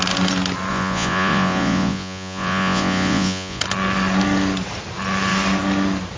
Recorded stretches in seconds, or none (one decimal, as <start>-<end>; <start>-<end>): 0.0-0.7; 3.6-6.2